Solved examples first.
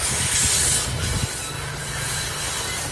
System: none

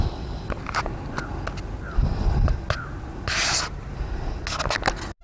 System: none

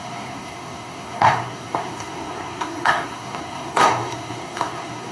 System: codec, SNAC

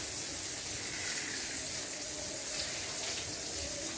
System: none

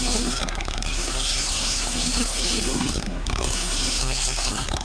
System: codec, SNAC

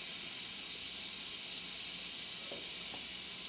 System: none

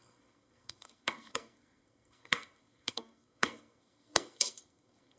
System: codec, SNAC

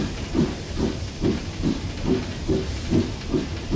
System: none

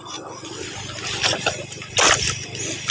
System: none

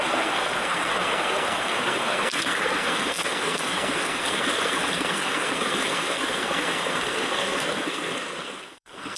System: codec, SNAC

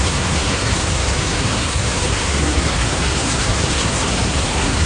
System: codec, SNAC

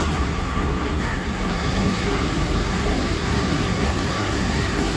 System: codec, SNAC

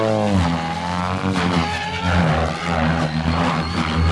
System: none